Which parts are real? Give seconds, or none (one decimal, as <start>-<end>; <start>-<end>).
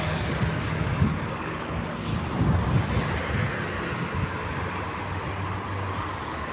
2.1-6.0